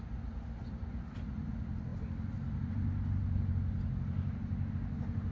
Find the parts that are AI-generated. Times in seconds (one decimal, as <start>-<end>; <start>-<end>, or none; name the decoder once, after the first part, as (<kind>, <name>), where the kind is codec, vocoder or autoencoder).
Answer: none